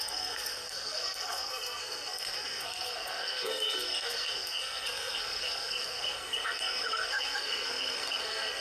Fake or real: fake